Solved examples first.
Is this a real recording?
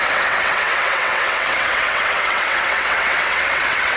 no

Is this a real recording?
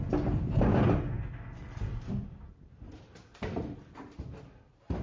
yes